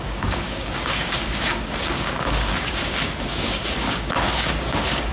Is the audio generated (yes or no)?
yes